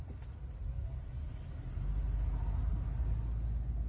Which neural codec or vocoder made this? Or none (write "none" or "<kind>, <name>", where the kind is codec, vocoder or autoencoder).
none